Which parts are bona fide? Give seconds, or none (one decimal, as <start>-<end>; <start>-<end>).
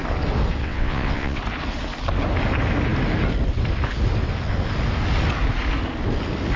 0.0-0.6; 1.4-6.6